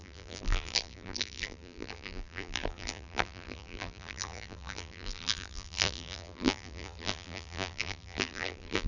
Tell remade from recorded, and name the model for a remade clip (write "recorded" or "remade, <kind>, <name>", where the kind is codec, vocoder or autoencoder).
remade, vocoder, BigVGAN v2